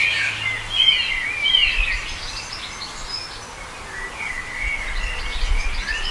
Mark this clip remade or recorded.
recorded